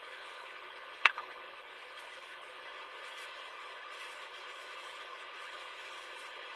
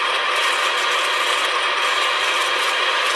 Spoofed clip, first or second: first